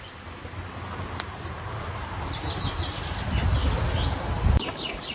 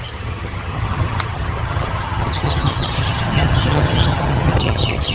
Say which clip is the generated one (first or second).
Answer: second